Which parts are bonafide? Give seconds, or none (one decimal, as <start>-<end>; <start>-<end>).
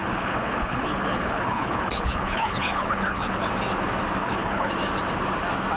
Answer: 3.5-4.2; 4.7-5.8